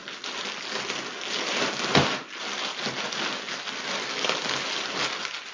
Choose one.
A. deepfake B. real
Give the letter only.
B